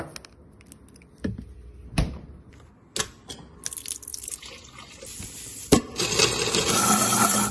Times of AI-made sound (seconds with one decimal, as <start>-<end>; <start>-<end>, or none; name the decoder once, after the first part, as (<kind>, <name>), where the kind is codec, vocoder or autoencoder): 1.8-2.5 (vocoder, BigVGAN v2); 4.1-4.9; 5.5-6.2